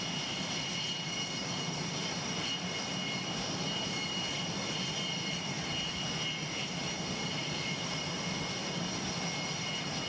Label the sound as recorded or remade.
recorded